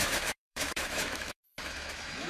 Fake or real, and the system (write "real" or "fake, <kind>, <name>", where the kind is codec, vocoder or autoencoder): fake, autoencoder, DAC-VAE